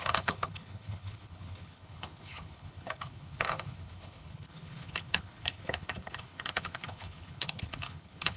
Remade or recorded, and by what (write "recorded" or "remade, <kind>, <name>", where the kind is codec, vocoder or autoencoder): remade, codec, HILCodec